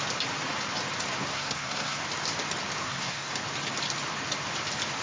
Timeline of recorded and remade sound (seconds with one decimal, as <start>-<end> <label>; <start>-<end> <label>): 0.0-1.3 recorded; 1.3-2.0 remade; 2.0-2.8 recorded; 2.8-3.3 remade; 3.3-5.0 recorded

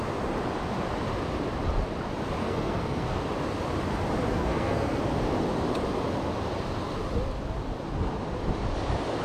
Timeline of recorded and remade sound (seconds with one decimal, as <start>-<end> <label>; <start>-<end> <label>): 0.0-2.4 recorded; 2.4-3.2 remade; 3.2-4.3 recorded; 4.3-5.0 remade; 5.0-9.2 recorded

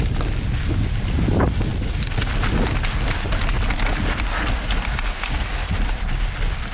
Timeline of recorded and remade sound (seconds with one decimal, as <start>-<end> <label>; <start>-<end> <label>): 0.0-6.7 recorded

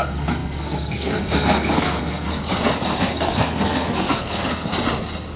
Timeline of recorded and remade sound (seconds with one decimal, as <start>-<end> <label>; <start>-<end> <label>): 0.0-2.4 remade; 2.4-3.0 recorded; 3.0-4.7 remade; 4.7-5.4 recorded

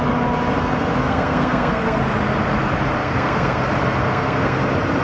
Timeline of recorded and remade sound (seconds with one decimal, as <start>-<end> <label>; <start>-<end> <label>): 0.0-1.0 recorded; 1.0-2.0 remade; 2.0-3.0 recorded; 3.0-3.6 remade; 3.6-4.0 recorded; 4.0-4.6 remade; 4.6-5.0 recorded